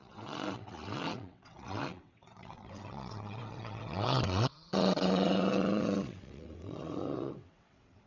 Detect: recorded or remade remade